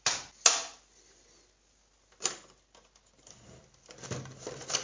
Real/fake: real